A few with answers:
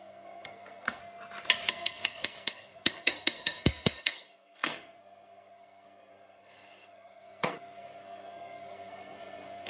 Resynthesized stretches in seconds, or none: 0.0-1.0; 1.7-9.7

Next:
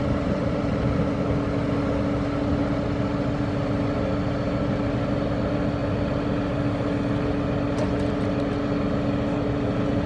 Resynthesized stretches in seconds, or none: none